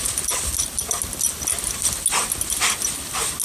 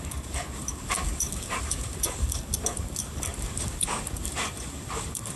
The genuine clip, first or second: first